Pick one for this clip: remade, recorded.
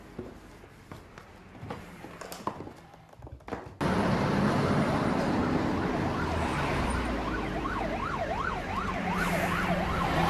recorded